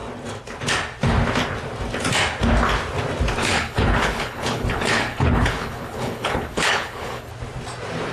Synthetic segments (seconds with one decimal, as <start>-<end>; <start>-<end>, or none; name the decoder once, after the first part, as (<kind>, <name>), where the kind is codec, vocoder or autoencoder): 3.4-7.3 (codec, HILCodec)

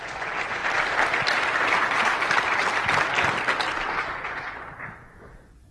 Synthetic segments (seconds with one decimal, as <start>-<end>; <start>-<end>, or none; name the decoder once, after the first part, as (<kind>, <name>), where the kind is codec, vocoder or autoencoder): 0.0-0.6 (vocoder, Vocos); 4.0-5.7

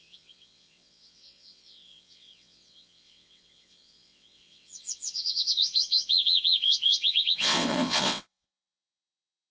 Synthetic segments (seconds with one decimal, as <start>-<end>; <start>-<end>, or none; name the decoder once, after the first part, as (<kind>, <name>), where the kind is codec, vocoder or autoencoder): 0.0-9.5 (vocoder, WaveNeXt)

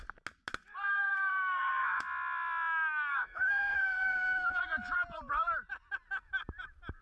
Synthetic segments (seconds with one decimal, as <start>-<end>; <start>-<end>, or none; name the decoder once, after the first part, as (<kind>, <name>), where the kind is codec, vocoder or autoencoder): 0.9-2.0 (codec, SNAC); 3.1-4.6

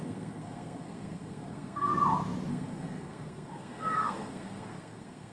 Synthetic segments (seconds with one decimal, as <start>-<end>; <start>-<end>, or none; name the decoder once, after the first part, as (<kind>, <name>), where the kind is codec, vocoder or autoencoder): 0.0-1.9 (codec, SNAC); 2.5-5.3

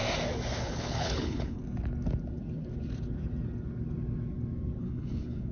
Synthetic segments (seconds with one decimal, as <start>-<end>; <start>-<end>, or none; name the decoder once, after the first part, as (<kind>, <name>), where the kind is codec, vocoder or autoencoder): 0.6-1.6 (codec, HILCodec); 4.8-5.5

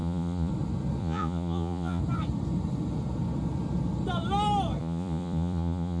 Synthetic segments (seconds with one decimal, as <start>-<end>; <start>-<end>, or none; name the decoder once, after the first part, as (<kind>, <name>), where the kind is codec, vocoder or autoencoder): 0.0-0.5 (vocoder, Vocos); 1.0-2.0; 4.8-6.0

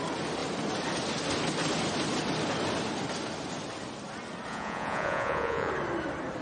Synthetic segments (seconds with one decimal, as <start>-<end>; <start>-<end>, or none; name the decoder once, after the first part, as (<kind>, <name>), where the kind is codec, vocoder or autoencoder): 4.5-5.7 (vocoder, Vocos)